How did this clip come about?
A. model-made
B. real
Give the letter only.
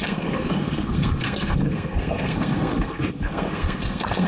A